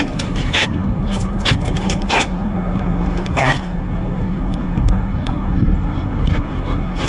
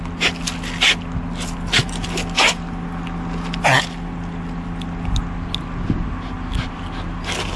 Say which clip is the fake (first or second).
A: first